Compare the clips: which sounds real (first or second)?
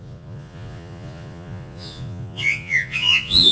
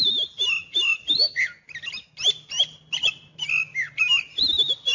second